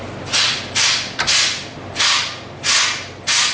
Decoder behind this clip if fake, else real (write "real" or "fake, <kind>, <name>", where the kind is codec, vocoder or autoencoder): real